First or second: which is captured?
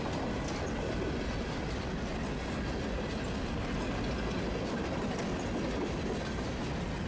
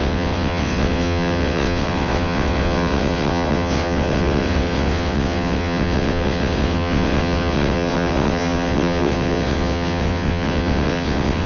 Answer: first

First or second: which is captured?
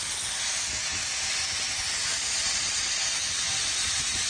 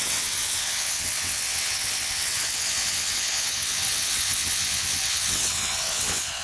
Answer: first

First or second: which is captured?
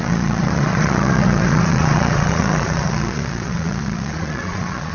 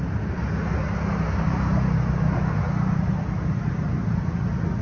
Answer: second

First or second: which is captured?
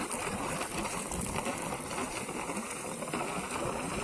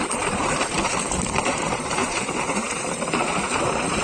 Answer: first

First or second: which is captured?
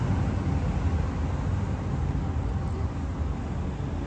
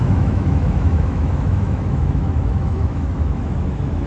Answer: first